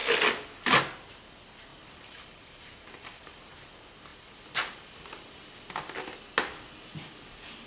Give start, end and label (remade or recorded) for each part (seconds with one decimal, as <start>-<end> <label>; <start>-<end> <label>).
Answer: 0.0-1.7 recorded; 1.7-3.5 remade; 3.5-7.7 recorded